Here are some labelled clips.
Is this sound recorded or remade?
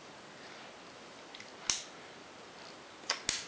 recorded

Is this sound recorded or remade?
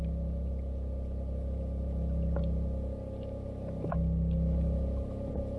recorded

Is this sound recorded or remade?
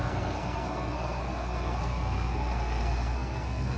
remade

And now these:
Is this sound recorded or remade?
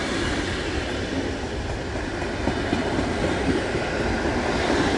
recorded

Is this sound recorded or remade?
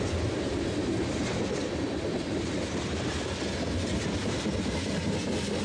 recorded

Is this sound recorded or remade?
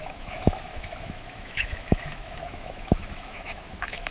remade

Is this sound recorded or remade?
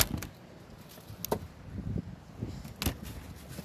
recorded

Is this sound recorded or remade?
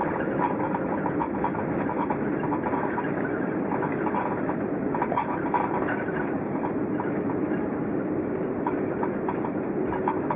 recorded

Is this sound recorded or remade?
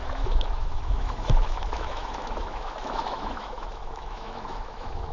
remade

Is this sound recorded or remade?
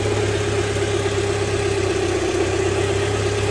recorded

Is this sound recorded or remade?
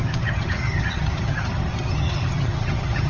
remade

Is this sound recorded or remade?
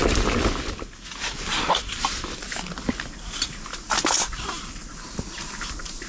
recorded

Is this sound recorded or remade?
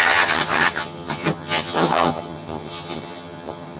remade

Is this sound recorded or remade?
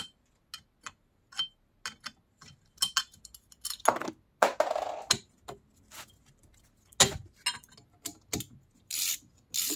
recorded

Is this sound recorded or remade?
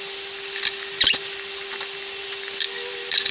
recorded